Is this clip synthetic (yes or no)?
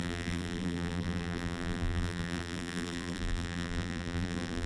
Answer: yes